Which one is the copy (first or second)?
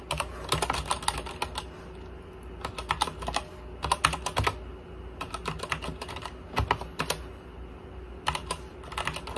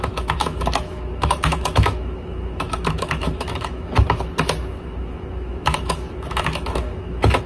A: second